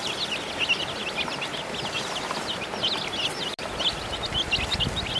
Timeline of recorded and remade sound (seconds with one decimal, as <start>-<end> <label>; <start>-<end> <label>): 0.0-5.2 recorded